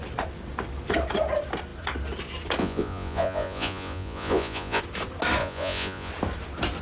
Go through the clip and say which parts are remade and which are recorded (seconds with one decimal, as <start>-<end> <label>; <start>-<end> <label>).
0.0-2.6 recorded; 2.6-4.8 remade; 4.8-5.4 recorded; 5.4-6.1 remade; 6.1-6.8 recorded